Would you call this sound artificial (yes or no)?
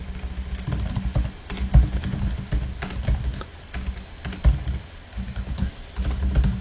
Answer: no